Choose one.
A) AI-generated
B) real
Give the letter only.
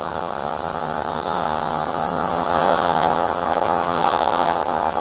A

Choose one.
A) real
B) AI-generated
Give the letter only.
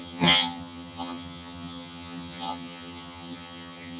B